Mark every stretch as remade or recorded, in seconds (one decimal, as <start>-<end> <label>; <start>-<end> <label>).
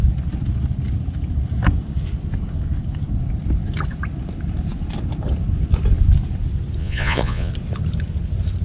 0.0-6.8 recorded; 6.8-7.5 remade; 7.5-8.6 recorded